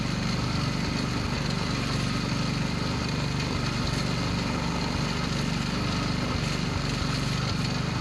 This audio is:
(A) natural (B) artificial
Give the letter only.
A